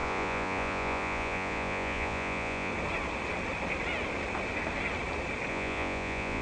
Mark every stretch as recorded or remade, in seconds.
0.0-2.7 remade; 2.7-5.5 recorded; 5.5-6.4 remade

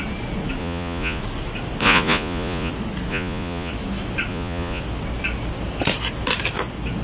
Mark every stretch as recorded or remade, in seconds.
0.0-0.6 recorded; 0.6-1.2 remade; 1.2-1.8 recorded; 1.8-2.7 remade; 2.7-3.1 recorded; 3.1-3.7 remade; 3.7-4.3 recorded; 4.3-4.8 remade; 4.8-7.0 recorded

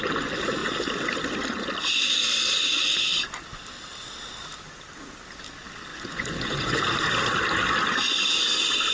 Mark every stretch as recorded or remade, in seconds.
0.0-5.9 recorded; 5.9-6.8 remade; 6.8-8.9 recorded

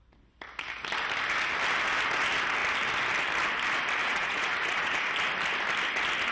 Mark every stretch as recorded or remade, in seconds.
0.0-4.0 recorded; 4.0-5.1 remade; 5.1-6.3 recorded

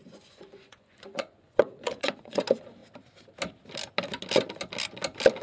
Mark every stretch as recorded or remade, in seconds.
0.0-2.4 remade; 2.4-5.4 recorded

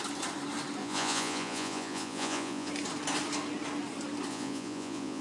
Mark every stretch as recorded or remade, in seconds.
0.0-0.8 recorded; 0.8-2.7 remade; 2.7-4.3 recorded; 4.3-5.2 remade

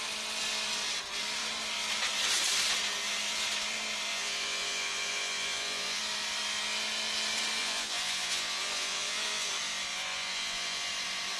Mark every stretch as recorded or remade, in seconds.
0.0-4.1 recorded; 4.1-6.0 remade; 6.0-7.6 recorded; 7.6-9.5 remade; 9.5-9.9 recorded; 9.9-10.9 remade; 10.9-11.4 recorded

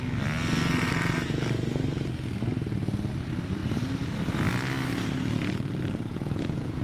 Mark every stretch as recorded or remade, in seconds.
0.0-6.1 recorded; 6.1-6.8 remade